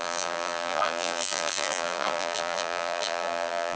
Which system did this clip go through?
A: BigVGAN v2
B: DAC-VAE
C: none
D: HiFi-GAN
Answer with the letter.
A